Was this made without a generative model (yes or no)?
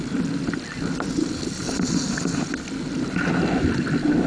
yes